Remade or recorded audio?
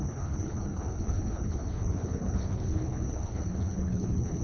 remade